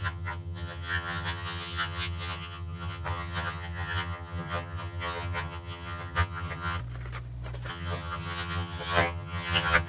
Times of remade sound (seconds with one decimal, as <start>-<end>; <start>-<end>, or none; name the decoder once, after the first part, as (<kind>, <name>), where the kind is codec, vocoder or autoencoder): 0.0-6.8 (vocoder, HiFi-GAN); 7.7-9.9